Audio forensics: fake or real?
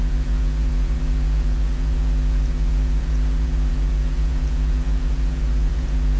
fake